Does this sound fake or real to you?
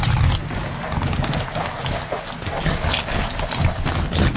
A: real